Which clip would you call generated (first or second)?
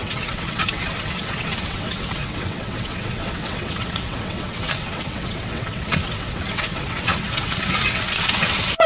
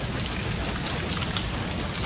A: first